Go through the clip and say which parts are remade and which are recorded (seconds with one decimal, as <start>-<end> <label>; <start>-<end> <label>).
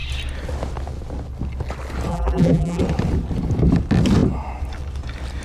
0.0-2.1 recorded; 2.1-2.8 remade; 2.8-5.4 recorded